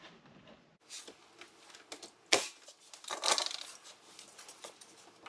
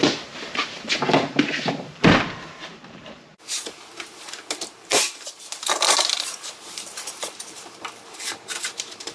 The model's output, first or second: second